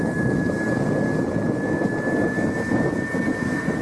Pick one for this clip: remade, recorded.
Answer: recorded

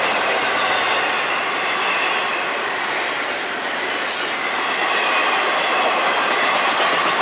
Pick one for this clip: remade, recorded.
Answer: recorded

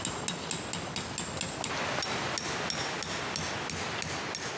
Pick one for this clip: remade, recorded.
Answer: recorded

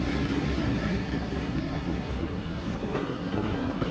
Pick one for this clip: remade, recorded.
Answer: remade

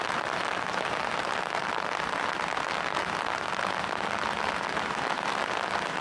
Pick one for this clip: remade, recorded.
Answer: recorded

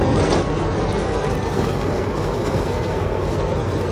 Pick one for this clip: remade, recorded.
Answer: remade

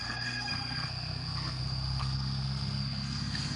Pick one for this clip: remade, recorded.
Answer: remade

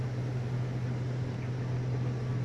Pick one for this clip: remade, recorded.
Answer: recorded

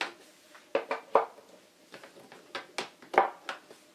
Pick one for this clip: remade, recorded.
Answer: recorded